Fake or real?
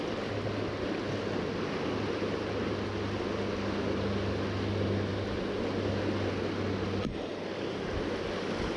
real